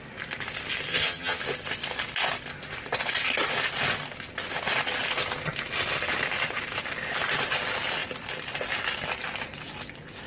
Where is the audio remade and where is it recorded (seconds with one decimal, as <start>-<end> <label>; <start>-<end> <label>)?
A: 0.0-0.9 recorded; 0.9-1.4 remade; 1.4-10.3 recorded